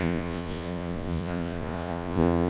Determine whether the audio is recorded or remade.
remade